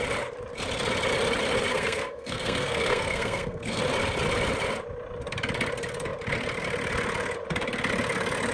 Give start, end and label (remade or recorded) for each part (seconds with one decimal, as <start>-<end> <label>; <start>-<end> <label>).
0.0-1.7 recorded; 1.7-3.8 remade; 3.8-8.5 recorded